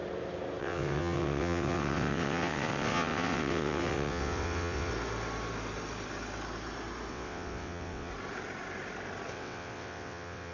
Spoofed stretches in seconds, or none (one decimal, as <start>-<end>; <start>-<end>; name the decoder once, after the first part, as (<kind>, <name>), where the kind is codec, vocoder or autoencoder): 0.6-4.9 (vocoder, WaveNeXt); 7.1-8.1; 9.3-10.5